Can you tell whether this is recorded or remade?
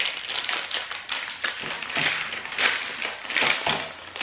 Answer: remade